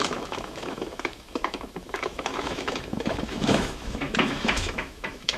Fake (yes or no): yes